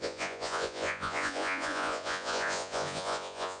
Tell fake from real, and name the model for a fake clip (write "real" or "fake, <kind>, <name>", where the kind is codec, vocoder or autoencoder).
fake, vocoder, Vocos